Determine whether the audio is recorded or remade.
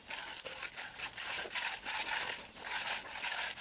recorded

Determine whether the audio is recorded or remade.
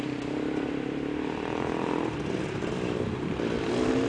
recorded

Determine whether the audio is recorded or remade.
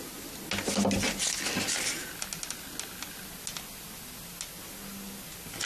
recorded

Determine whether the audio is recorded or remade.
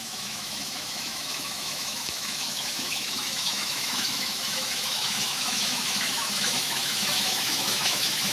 remade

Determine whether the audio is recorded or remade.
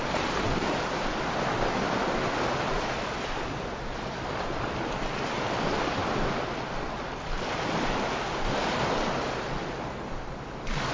recorded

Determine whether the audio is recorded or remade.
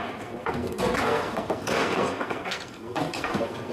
remade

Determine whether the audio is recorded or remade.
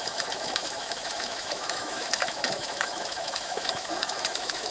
remade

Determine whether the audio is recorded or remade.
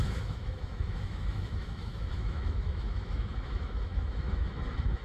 remade